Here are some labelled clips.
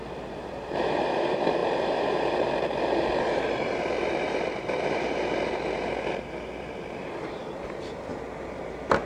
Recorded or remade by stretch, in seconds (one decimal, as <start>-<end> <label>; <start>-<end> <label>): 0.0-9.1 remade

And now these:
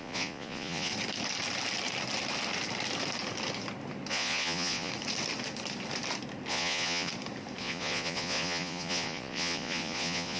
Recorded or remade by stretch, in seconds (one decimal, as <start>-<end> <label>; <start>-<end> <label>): 0.0-0.9 remade; 0.9-4.1 recorded; 4.1-4.9 remade; 4.9-6.5 recorded; 6.5-7.1 remade; 7.1-7.6 recorded; 7.6-10.4 remade

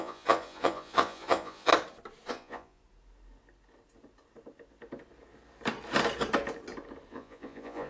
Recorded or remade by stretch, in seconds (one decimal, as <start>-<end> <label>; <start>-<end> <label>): 0.0-1.7 remade; 1.7-2.3 recorded; 2.3-2.8 remade; 2.8-7.1 recorded; 7.1-7.9 remade